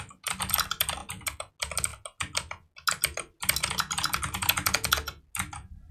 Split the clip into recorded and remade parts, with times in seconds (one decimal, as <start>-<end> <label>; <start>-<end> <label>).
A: 0.0-1.0 recorded; 1.0-1.5 remade; 1.5-5.9 recorded